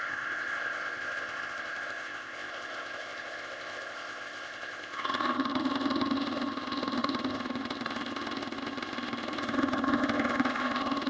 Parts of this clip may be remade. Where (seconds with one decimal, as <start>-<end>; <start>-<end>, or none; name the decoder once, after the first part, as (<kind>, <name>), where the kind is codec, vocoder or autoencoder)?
0.0-11.1 (codec, ZipCodec)